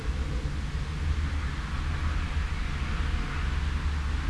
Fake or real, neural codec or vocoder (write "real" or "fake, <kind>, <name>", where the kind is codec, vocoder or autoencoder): real